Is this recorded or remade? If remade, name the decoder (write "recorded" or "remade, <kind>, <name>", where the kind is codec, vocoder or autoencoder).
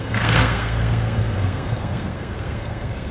remade, codec, SNAC